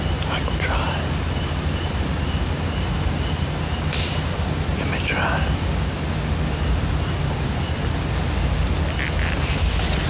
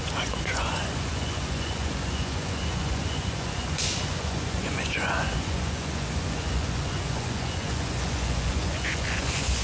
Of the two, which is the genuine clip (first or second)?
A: first